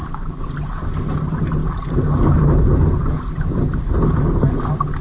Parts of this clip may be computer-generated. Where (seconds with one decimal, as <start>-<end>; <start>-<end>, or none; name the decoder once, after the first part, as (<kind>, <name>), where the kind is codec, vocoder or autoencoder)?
none